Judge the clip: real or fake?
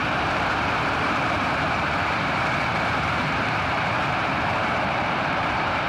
fake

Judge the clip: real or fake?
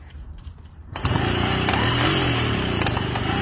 fake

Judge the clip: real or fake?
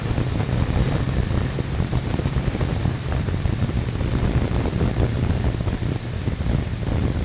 fake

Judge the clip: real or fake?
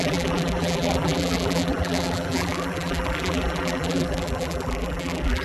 fake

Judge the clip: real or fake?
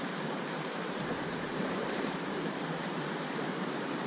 fake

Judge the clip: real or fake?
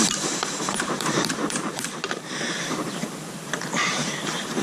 fake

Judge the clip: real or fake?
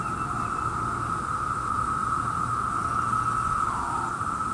real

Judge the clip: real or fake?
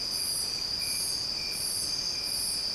real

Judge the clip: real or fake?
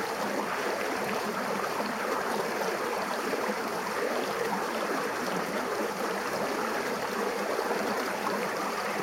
fake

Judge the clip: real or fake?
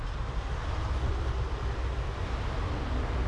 real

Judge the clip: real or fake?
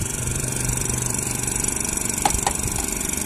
fake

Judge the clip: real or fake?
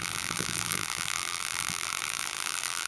fake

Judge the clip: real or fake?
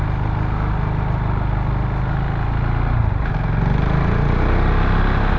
real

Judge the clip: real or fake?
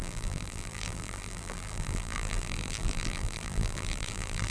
fake